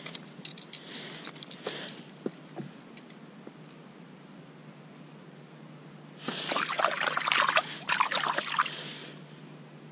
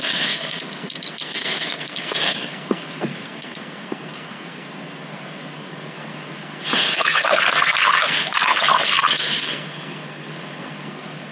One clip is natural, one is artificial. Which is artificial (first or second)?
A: second